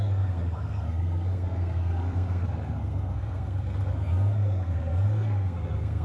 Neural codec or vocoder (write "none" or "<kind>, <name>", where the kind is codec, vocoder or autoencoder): codec, SNAC